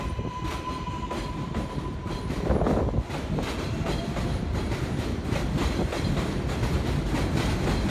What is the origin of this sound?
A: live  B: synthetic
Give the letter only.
A